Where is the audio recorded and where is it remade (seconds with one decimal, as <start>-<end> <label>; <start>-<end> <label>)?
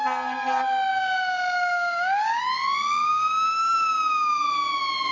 0.0-0.9 recorded; 0.9-2.4 remade; 2.4-3.1 recorded; 3.1-4.4 remade; 4.4-5.1 recorded